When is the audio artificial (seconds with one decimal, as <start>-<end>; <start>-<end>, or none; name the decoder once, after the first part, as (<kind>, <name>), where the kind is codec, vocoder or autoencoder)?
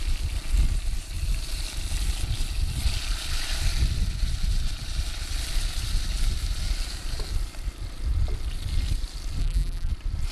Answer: 9.4-9.9 (vocoder, BigVGAN v2)